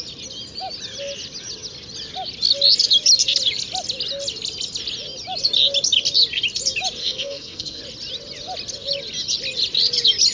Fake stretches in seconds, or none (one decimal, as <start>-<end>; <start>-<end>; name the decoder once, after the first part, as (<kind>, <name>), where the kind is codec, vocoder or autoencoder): 7.0-7.8 (codec, SNAC)